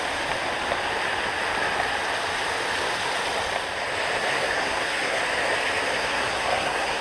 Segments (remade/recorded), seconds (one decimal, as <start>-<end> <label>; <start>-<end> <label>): 0.0-4.2 recorded; 4.2-5.2 remade; 5.2-5.9 recorded; 5.9-7.0 remade

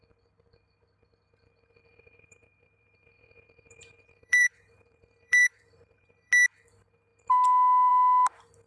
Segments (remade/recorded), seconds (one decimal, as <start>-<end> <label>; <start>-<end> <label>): 0.0-1.9 recorded; 1.9-6.3 remade; 6.3-8.7 recorded

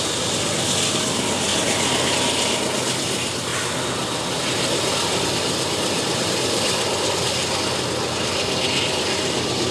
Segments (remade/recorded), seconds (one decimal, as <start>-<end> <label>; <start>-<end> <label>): 0.0-9.7 recorded

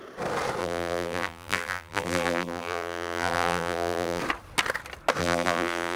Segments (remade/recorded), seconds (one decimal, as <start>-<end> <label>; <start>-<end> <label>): 0.0-0.6 recorded; 0.6-4.2 remade; 4.2-5.2 recorded; 5.2-6.0 remade

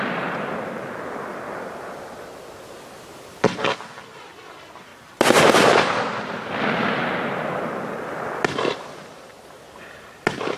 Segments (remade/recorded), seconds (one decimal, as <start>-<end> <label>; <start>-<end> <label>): 0.0-10.6 recorded

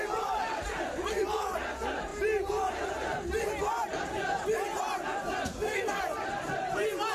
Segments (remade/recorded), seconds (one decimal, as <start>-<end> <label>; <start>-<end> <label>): 0.0-5.5 recorded; 5.5-6.0 remade; 6.0-7.1 recorded

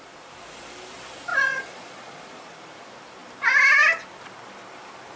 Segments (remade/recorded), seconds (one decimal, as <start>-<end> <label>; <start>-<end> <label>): 0.0-1.3 recorded; 1.3-2.4 remade; 2.4-5.2 recorded